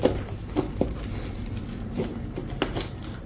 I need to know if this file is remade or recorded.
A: recorded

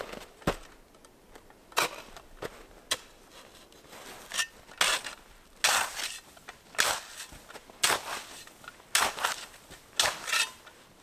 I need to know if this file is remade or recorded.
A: recorded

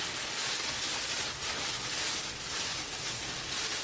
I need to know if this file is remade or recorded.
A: recorded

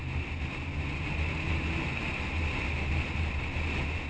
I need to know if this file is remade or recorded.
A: recorded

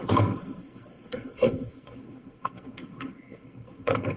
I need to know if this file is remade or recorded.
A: remade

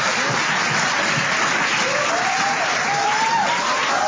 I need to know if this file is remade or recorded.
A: recorded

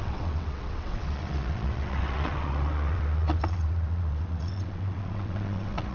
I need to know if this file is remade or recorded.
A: remade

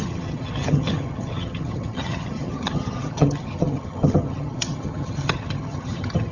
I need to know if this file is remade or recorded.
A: remade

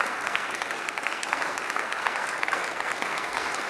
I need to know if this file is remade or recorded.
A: remade